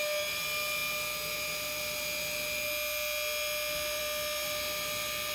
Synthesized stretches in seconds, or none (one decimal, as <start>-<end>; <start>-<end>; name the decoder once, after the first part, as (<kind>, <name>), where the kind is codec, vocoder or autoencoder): none